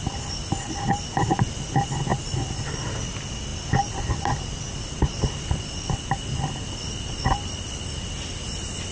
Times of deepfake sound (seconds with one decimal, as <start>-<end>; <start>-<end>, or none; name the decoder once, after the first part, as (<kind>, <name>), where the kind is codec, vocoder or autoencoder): none